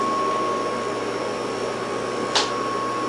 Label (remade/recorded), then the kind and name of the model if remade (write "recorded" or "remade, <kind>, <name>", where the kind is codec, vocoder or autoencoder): recorded